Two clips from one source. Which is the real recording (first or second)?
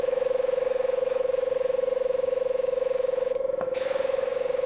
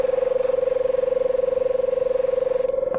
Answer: second